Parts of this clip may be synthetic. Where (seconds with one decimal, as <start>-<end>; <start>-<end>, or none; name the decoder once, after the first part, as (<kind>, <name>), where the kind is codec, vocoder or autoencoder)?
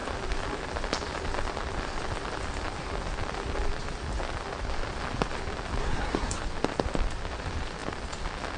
5.8-6.4 (codec, SNAC)